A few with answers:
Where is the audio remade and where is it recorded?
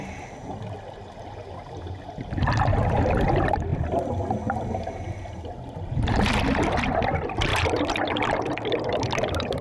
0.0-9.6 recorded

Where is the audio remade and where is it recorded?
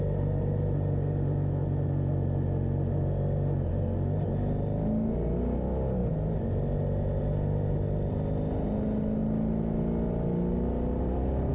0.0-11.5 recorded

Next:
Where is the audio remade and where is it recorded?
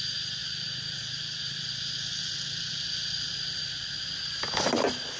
0.0-0.4 recorded; 0.4-2.2 remade; 2.2-2.7 recorded; 2.7-4.0 remade; 4.0-5.2 recorded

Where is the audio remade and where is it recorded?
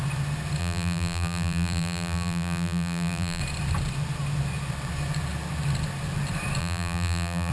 0.0-0.6 recorded; 0.6-3.4 remade; 3.4-6.6 recorded; 6.6-7.5 remade